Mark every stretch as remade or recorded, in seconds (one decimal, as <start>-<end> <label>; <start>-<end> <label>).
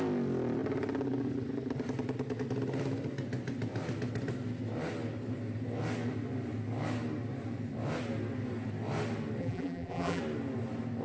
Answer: 0.0-9.4 recorded; 9.4-10.2 remade; 10.2-11.0 recorded